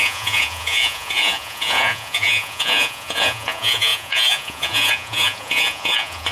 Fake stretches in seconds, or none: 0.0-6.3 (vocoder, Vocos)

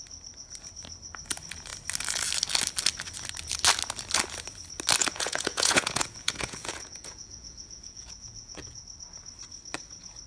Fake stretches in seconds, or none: 5.0-8.8 (vocoder, Vocos)

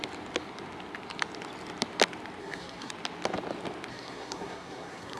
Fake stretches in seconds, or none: 2.4-2.9 (codec, SNAC); 3.9-5.2

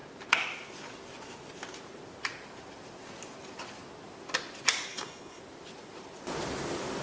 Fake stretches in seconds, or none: 4.9-5.4 (codec, HILCodec)

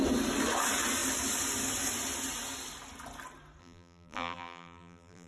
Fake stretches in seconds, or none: 3.6-5.3 (vocoder, BigVGAN v2)